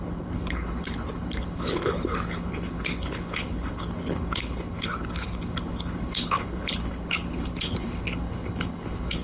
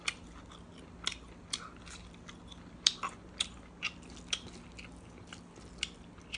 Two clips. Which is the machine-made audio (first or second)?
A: first